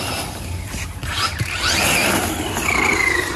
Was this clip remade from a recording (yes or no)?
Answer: no